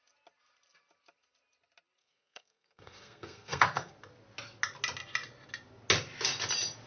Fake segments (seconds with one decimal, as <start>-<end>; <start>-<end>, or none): 2.0-3.9